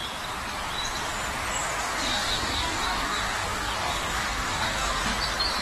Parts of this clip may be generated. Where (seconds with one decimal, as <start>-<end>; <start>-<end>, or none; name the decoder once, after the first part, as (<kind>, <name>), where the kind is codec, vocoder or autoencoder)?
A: 1.8-5.0 (codec, DAC)